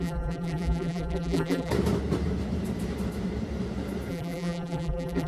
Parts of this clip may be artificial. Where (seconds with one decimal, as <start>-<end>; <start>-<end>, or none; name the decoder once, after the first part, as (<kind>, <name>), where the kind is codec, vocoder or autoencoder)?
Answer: 0.0-1.7 (vocoder, BigVGAN v2); 4.1-5.3